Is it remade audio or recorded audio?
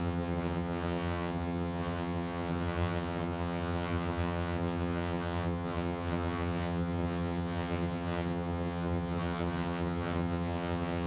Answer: remade